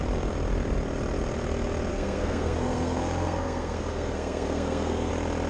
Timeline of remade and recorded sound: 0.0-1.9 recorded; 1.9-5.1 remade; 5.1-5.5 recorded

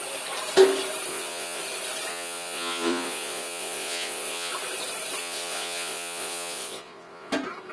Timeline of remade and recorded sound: 0.0-1.1 recorded; 1.1-1.6 remade; 1.6-2.1 recorded; 2.1-4.5 remade; 4.5-5.2 recorded; 5.2-7.3 remade; 7.3-7.7 recorded

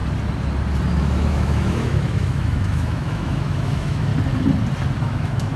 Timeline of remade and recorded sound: 0.0-1.0 recorded; 1.0-4.1 remade; 4.1-5.0 recorded; 5.0-5.6 remade

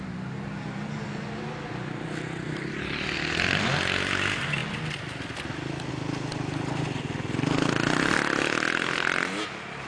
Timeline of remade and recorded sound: 0.0-9.9 recorded

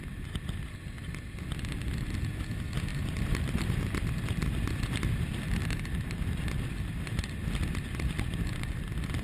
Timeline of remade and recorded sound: 0.0-2.9 recorded; 2.9-4.2 remade; 4.2-5.6 recorded; 5.6-6.2 remade; 6.2-9.2 recorded